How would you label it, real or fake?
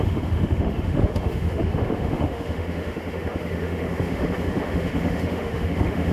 fake